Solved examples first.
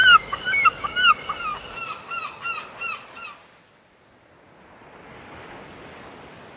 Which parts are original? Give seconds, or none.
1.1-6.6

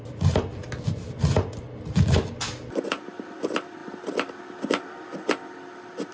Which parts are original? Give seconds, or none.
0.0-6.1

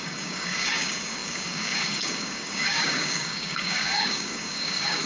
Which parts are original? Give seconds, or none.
none

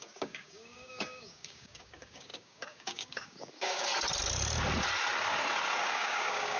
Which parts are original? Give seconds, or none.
3.9-5.8